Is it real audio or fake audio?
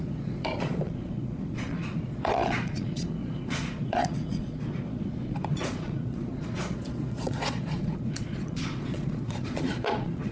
fake